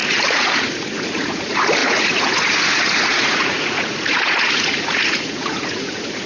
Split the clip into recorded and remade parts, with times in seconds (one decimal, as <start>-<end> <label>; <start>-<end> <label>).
0.0-6.3 remade